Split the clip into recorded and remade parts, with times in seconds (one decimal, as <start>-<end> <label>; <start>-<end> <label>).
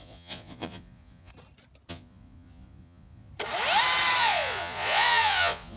0.0-1.3 remade; 1.3-1.9 recorded; 1.9-3.3 remade; 3.3-4.2 recorded; 4.2-5.8 remade